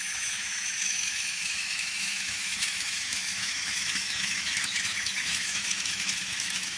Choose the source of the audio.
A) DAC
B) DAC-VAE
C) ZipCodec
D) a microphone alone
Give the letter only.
B